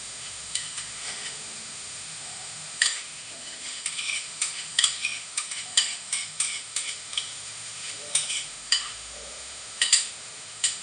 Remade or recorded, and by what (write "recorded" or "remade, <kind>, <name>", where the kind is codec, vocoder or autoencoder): remade, autoencoder, DAC-VAE